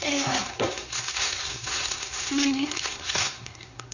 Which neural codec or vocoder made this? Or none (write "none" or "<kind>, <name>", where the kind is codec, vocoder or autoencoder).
codec, SNAC